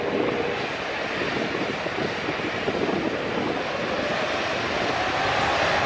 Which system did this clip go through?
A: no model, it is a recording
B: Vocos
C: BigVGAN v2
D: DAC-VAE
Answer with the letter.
A